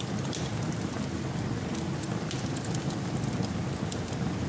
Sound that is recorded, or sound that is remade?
recorded